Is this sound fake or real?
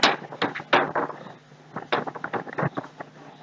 real